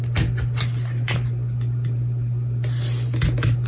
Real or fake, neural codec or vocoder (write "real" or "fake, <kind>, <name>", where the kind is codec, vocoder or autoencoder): real